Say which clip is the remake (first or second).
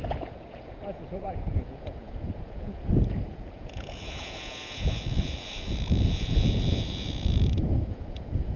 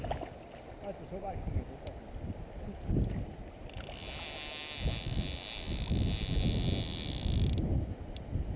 first